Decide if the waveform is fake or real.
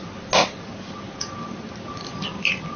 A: real